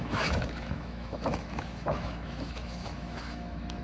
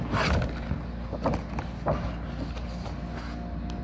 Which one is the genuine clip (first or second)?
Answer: second